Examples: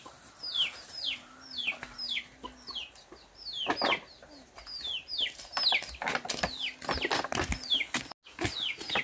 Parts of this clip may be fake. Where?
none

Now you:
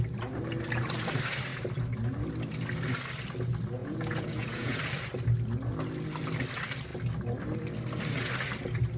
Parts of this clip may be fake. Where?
3.8-4.8 (vocoder, Vocos)

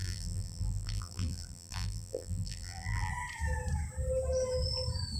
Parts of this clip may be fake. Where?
0.0-3.1 (vocoder, BigVGAN v2)

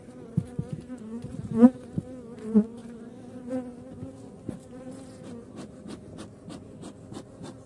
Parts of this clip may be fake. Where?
none

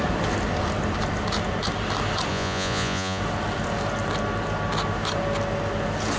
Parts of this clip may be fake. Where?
2.3-3.2 (vocoder, Vocos)

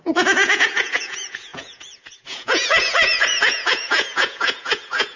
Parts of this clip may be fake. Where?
0.0-5.2 (vocoder, Vocos)

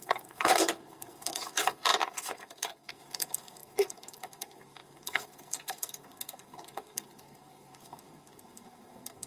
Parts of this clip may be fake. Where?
0.0-9.3 (codec, SNAC)

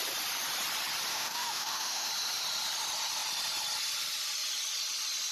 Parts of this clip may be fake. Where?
1.1-2.1 (autoencoder, DAC-VAE)